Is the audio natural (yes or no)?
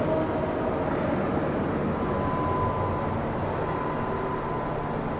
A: yes